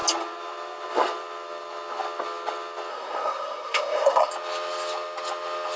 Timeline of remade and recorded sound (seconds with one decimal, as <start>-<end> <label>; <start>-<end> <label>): 0.0-2.9 recorded; 2.9-4.3 remade; 4.3-5.8 recorded